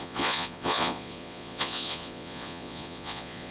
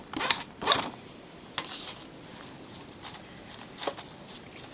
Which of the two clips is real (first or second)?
second